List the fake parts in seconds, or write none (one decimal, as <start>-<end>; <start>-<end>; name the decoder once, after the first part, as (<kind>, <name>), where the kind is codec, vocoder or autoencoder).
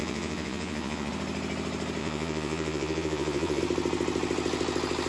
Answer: 0.0-1.1 (vocoder, Vocos); 2.0-3.6